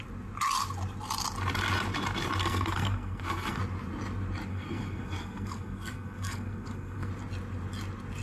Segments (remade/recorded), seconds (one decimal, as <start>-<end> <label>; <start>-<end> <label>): 0.0-2.4 recorded; 2.4-3.6 remade; 3.6-4.5 recorded; 4.5-7.1 remade; 7.1-8.2 recorded